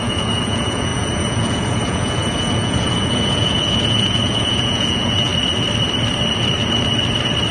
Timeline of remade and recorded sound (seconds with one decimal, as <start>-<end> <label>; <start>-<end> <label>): 0.0-5.3 remade; 5.3-7.5 recorded

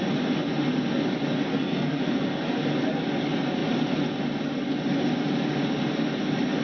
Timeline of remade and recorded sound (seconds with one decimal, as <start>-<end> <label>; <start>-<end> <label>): 0.0-1.5 recorded; 1.5-2.0 remade; 2.0-6.6 recorded

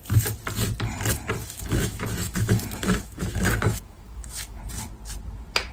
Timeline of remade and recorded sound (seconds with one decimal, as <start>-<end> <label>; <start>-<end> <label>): 0.0-1.4 recorded; 1.4-4.6 remade; 4.6-5.7 recorded

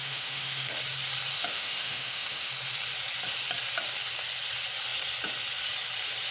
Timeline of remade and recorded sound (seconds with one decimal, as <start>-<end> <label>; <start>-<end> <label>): 0.0-0.7 remade; 0.7-1.4 recorded; 1.4-2.5 remade; 2.5-6.3 recorded

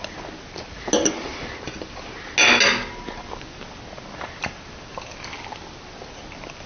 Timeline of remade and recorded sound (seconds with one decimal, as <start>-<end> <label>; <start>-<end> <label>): 0.0-1.3 recorded; 1.3-2.1 remade; 2.1-6.7 recorded

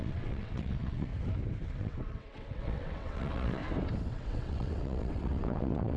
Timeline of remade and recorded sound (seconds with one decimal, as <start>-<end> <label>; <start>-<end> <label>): 0.0-1.1 remade; 1.1-1.7 recorded; 1.7-3.6 remade; 3.6-4.1 recorded; 4.1-6.0 remade

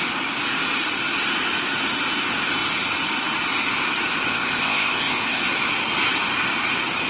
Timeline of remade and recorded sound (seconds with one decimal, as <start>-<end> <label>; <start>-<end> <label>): 0.0-4.3 recorded; 4.3-5.4 remade; 5.4-7.1 recorded

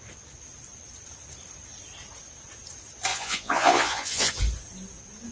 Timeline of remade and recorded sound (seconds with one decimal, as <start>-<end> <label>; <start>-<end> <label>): 0.0-3.1 recorded; 3.1-4.3 remade; 4.3-5.3 recorded